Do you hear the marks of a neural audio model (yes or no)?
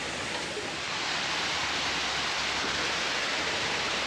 no